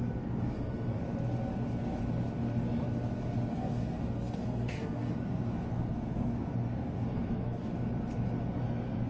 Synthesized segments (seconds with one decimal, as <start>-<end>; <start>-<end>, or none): 0.0-1.0; 3.5-7.7; 8.5-9.1